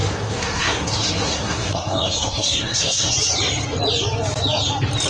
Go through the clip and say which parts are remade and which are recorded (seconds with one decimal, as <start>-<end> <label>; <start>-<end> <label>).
0.0-3.1 remade; 3.1-5.1 recorded